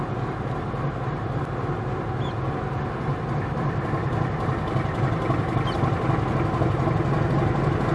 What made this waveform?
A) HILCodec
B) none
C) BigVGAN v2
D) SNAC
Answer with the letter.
B